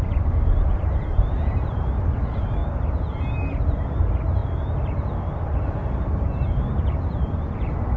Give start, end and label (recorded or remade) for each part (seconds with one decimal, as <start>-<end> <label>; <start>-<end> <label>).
0.0-2.6 remade; 2.6-3.6 recorded; 3.6-4.4 remade; 4.4-5.7 recorded; 5.7-8.0 remade